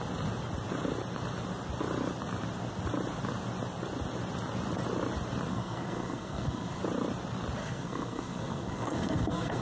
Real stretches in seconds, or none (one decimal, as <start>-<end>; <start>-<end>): 0.0-5.5; 6.8-7.6